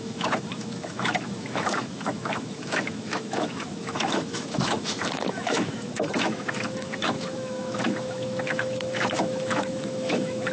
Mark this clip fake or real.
fake